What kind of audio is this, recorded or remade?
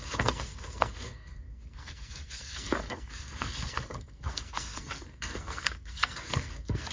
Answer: remade